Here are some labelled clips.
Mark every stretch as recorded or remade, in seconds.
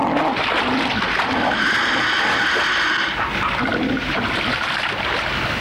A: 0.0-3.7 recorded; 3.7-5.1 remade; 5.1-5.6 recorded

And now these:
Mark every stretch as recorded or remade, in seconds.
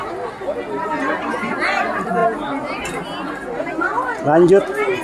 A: 0.0-5.0 recorded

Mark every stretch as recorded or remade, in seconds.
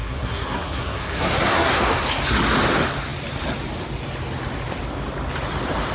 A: 0.0-1.8 remade; 1.8-5.9 recorded